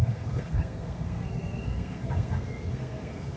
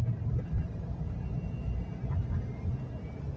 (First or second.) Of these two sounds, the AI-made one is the first